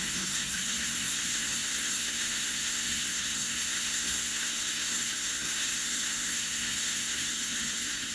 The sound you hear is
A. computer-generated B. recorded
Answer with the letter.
A